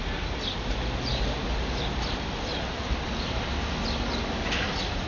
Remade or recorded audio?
recorded